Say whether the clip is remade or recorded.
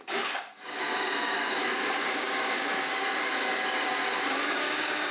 remade